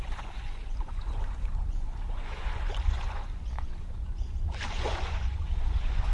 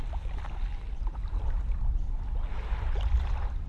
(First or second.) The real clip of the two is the second